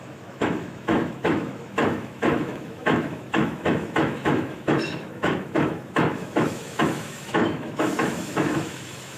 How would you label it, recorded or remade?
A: remade